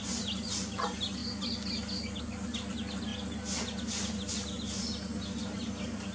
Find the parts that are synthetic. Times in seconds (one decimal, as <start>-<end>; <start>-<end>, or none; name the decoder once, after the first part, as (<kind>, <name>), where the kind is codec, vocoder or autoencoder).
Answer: none